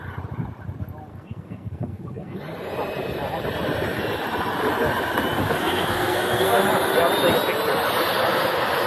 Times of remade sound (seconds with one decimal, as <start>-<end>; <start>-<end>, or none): 1.1-2.4; 5.4-6.6